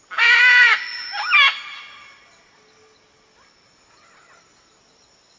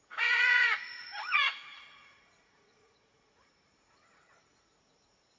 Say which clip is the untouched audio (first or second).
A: first